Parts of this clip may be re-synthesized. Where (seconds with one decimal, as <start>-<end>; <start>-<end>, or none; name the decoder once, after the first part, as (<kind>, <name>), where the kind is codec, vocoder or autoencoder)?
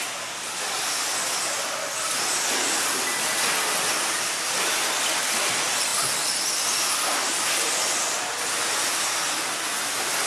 none